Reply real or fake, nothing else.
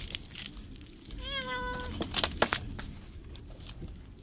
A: real